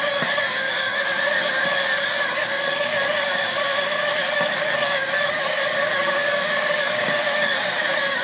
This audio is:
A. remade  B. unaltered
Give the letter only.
A